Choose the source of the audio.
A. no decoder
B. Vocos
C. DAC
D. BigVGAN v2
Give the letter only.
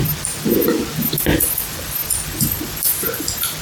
A